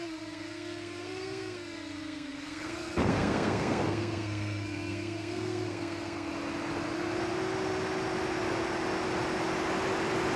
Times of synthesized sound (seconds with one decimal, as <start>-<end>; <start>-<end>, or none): 0.0-6.3